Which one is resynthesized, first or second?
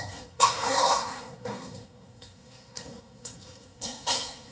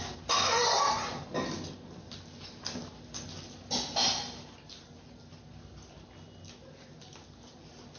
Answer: first